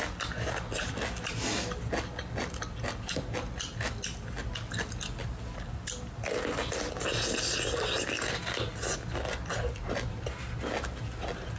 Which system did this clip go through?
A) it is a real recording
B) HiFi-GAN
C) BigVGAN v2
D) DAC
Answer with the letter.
A